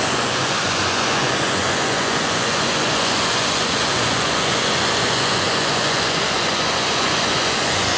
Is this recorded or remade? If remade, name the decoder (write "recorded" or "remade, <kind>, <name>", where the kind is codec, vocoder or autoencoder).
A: remade, vocoder, Vocos